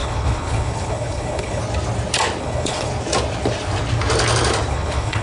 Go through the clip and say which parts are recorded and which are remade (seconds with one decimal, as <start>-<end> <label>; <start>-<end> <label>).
0.0-1.6 remade; 1.6-2.4 recorded; 2.4-2.9 remade; 2.9-4.7 recorded; 4.7-5.2 remade